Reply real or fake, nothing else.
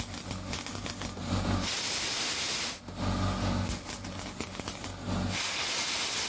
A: real